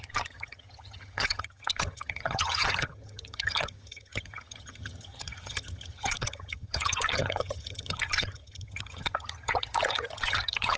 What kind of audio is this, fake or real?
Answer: fake